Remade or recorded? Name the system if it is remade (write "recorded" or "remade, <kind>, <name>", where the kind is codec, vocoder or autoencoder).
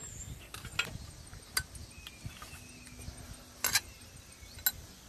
recorded